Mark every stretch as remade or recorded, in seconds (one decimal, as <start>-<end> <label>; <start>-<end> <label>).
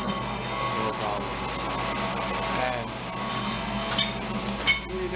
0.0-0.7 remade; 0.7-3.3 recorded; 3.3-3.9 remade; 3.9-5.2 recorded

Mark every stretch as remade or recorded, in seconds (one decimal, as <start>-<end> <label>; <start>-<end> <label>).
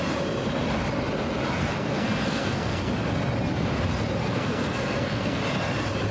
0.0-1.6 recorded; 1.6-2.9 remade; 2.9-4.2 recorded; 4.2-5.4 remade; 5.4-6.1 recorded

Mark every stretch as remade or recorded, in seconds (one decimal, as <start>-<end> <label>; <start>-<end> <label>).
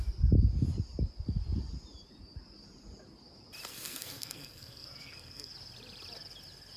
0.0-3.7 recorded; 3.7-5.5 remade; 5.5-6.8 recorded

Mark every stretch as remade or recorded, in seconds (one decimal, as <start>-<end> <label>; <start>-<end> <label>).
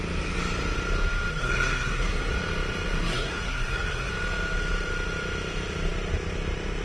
0.0-1.3 recorded; 1.3-2.3 remade; 2.3-3.0 recorded; 3.0-4.1 remade; 4.1-6.8 recorded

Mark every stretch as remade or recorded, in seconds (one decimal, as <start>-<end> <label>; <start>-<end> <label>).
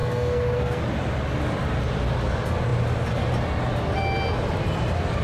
0.0-0.8 remade; 0.8-5.2 recorded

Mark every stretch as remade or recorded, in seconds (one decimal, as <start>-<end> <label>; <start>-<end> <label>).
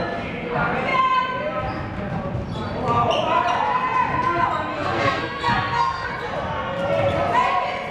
0.0-4.7 recorded; 4.7-6.1 remade; 6.1-7.9 recorded